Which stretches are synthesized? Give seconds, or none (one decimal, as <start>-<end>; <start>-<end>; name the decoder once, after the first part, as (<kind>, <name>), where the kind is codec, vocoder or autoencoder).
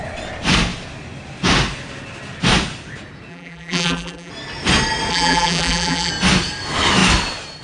3.3-4.3 (vocoder, BigVGAN v2); 5.1-6.1